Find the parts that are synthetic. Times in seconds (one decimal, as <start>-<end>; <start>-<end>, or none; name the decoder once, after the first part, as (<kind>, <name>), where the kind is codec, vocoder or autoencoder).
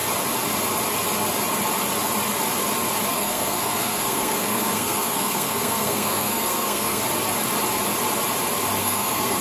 3.1-7.0 (codec, SNAC); 8.8-9.4